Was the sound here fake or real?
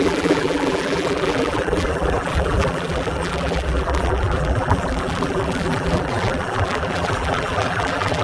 fake